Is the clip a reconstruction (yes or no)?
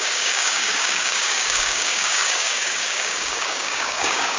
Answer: yes